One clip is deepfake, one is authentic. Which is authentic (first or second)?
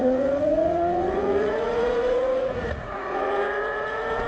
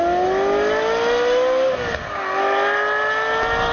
second